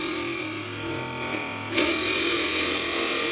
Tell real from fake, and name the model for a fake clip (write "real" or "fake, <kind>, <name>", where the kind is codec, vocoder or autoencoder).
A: real